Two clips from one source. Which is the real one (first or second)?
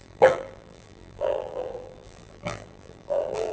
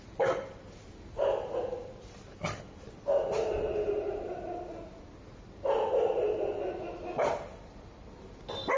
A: second